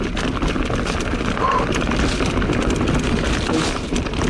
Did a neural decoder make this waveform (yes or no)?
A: no